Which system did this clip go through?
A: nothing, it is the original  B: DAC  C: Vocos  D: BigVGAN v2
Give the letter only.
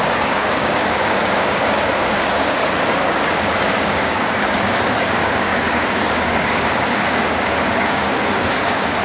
B